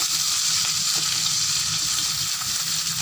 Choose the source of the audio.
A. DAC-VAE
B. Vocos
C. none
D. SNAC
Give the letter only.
C